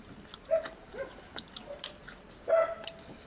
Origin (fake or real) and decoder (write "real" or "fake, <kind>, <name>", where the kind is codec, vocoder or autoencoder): real